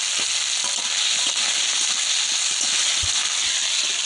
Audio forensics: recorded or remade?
recorded